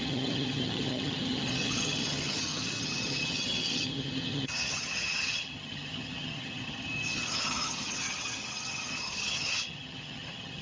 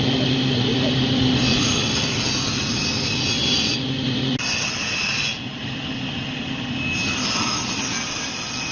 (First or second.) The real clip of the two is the second